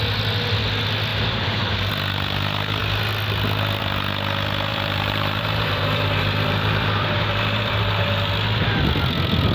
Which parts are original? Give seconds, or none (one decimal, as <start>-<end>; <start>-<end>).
0.0-1.1; 1.9-4.7; 8.3-9.5